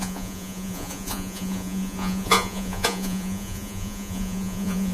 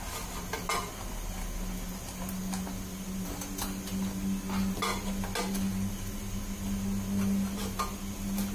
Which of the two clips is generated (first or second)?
first